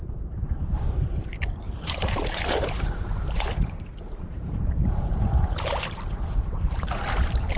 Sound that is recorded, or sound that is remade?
remade